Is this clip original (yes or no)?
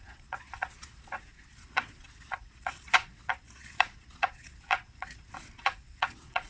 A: no